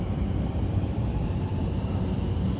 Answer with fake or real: fake